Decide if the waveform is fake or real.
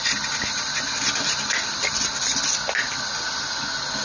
real